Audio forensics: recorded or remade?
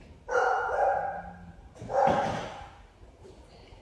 recorded